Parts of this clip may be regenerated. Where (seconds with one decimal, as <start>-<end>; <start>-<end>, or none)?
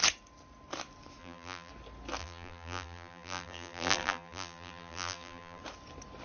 1.2-1.7; 2.2-5.6